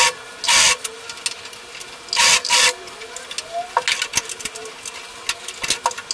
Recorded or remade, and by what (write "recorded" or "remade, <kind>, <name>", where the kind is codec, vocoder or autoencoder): recorded